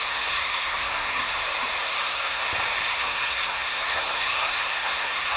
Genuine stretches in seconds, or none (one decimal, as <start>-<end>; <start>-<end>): 1.3-1.9; 2.4-2.9